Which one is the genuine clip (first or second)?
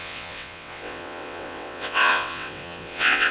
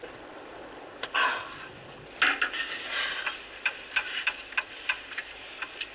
second